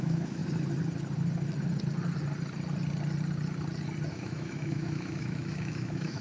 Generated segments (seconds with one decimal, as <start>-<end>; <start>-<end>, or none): 0.0-0.4; 4.1-6.2